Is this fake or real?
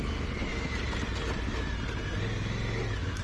real